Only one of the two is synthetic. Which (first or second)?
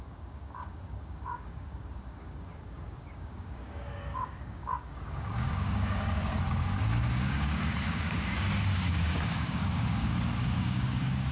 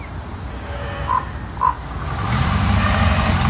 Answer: first